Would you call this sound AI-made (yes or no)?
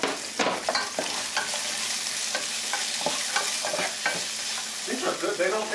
no